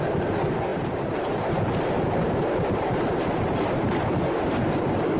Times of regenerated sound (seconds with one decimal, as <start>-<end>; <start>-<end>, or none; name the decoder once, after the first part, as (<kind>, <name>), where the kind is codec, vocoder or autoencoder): 0.0-5.2 (vocoder, BigVGAN v2)